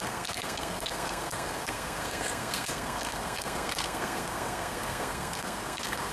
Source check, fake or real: fake